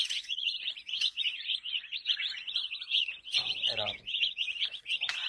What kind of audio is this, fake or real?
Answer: fake